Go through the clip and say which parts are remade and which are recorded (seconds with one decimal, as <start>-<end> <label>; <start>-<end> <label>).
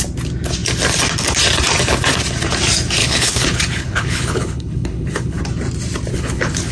0.0-3.0 recorded; 3.0-5.4 remade; 5.4-6.1 recorded; 6.1-6.7 remade